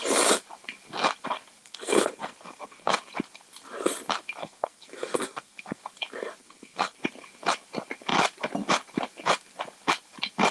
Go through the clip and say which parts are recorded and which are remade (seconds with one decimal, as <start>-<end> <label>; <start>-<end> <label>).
0.0-1.6 recorded; 1.6-2.9 remade; 2.9-4.4 recorded; 4.4-5.8 remade; 5.8-6.4 recorded; 6.4-7.0 remade; 7.0-10.5 recorded

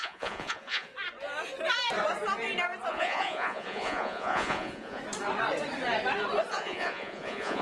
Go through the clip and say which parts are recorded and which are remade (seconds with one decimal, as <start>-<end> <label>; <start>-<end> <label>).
0.0-0.9 remade; 0.9-2.9 recorded; 2.9-5.0 remade; 5.0-6.5 recorded; 6.5-7.6 remade

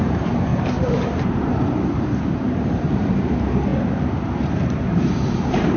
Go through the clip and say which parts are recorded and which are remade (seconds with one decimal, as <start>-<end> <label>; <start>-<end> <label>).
0.0-3.7 remade; 3.7-4.5 recorded; 4.5-5.8 remade